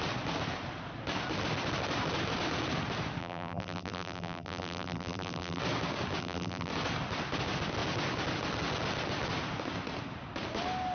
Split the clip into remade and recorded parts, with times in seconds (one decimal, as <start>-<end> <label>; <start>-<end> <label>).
0.0-3.2 recorded; 3.2-5.6 remade; 5.6-6.2 recorded; 6.2-6.7 remade; 6.7-10.9 recorded